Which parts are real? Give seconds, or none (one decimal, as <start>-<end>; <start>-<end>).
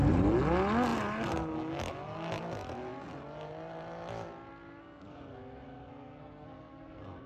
0.0-4.8